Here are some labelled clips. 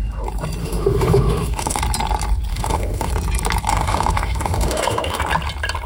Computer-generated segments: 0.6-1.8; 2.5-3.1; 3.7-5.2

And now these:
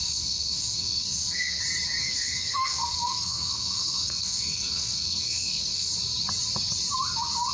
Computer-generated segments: 0.0-1.6; 2.0-5.9

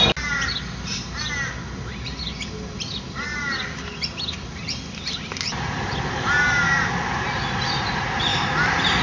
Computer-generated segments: none